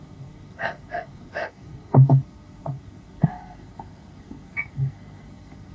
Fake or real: fake